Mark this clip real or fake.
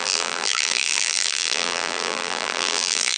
fake